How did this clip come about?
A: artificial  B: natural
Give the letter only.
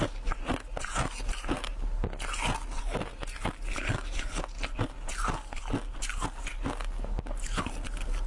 B